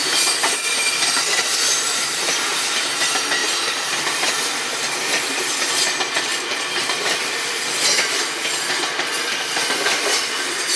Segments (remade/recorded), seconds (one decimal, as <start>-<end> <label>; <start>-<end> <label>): 0.0-1.5 recorded; 1.5-2.3 remade; 2.3-3.4 recorded; 3.4-4.3 remade; 4.3-6.3 recorded; 6.3-8.1 remade; 8.1-10.8 recorded